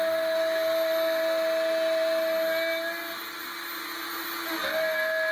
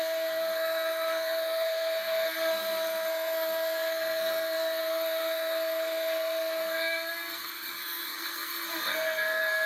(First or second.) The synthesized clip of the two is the second